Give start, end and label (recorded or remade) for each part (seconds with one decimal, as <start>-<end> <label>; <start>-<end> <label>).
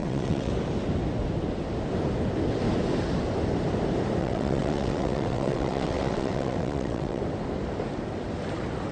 0.0-0.5 remade; 0.5-4.2 recorded; 4.2-7.2 remade; 7.2-8.9 recorded